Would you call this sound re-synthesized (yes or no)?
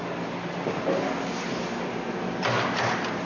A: no